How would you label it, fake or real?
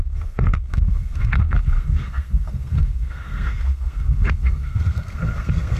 fake